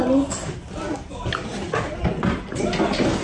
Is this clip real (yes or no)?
yes